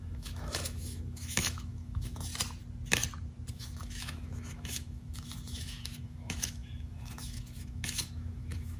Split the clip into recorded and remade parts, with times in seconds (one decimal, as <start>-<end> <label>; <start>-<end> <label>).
0.0-2.3 remade; 2.3-3.5 recorded; 3.5-8.8 remade